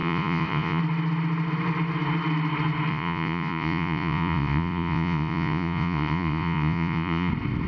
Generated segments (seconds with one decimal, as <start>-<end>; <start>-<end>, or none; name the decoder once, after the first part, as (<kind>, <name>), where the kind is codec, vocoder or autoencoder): 0.0-0.8 (vocoder, Vocos); 2.9-7.3